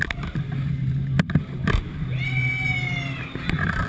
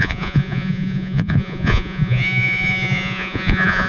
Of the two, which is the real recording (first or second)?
first